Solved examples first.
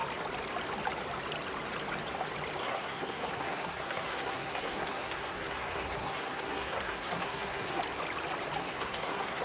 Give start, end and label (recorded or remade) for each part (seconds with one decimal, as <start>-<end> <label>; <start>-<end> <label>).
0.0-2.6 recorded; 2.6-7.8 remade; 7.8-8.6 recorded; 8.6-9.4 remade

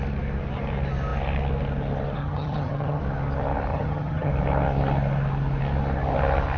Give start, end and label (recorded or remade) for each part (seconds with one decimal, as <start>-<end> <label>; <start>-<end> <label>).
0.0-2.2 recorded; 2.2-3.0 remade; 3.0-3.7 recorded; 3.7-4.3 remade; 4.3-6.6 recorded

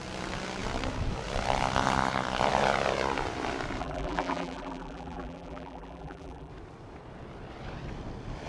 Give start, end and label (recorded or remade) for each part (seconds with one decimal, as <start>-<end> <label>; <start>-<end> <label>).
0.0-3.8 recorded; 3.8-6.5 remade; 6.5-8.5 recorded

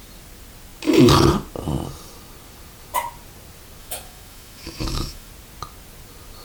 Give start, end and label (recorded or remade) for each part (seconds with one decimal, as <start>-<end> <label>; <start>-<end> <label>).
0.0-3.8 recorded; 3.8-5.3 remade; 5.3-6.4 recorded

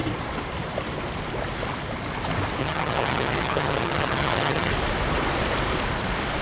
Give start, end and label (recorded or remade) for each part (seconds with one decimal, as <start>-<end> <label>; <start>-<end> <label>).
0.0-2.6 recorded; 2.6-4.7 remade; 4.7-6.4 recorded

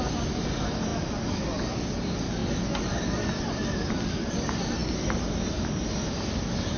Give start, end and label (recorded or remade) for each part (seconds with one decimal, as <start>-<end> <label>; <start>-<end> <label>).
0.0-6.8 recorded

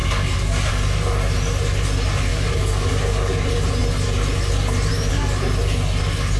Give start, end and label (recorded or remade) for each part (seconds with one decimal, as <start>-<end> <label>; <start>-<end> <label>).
0.0-0.7 remade; 0.7-2.3 recorded; 2.3-3.3 remade; 3.3-6.4 recorded

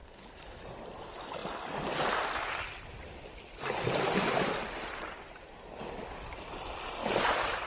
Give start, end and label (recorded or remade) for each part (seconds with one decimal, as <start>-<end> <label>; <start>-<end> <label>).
0.0-0.6 remade; 0.6-7.7 recorded